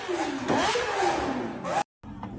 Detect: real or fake real